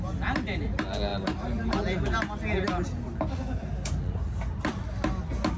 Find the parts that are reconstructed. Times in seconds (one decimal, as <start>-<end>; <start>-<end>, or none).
none